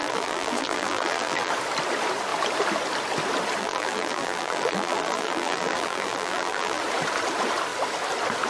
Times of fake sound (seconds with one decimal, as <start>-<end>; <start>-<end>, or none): 0.0-1.5; 3.6-6.8